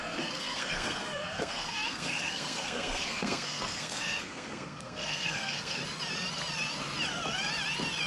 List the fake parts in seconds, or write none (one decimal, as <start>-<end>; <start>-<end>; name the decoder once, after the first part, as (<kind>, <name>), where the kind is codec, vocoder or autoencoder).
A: 0.0-5.8 (codec, SNAC)